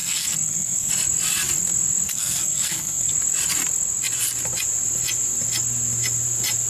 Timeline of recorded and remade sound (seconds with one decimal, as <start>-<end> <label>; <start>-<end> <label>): 0.0-0.9 remade; 0.9-2.1 recorded; 2.1-3.1 remade; 3.1-6.7 recorded